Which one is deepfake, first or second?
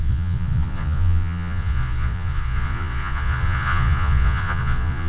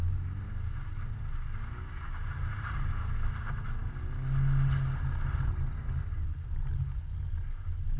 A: first